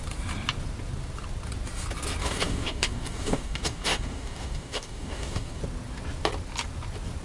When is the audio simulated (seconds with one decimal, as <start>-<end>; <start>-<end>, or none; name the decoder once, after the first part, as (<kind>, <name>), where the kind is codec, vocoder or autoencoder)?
2.2-5.6 (codec, DAC)